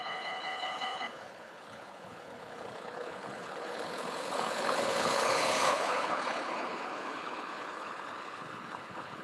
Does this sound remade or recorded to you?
remade